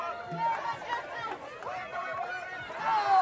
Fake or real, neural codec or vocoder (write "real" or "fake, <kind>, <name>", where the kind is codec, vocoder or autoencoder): real